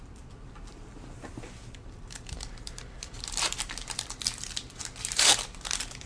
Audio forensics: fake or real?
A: fake